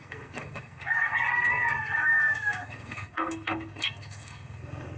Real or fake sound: fake